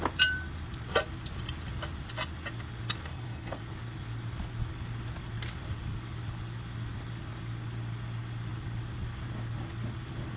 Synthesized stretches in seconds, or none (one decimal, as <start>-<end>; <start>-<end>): 3.1-3.6